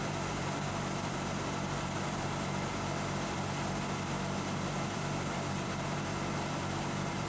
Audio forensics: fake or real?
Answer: fake